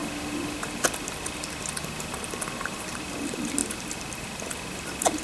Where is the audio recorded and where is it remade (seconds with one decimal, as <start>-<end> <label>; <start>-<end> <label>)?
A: 0.0-5.2 recorded